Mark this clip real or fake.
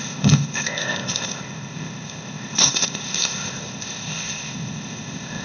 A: fake